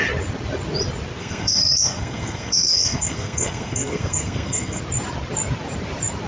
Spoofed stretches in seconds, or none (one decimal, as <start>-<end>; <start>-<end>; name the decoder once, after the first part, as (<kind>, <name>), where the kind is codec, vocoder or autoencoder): 1.2-4.8 (codec, SNAC)